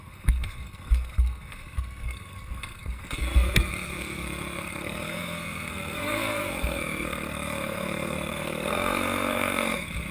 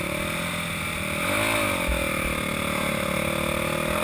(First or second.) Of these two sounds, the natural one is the second